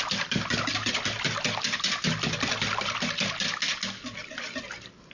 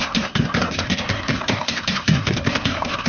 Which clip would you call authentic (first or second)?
first